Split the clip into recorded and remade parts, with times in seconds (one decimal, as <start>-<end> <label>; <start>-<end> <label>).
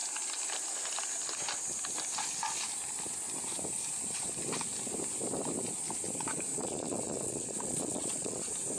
0.0-6.5 recorded; 6.5-8.4 remade; 8.4-8.8 recorded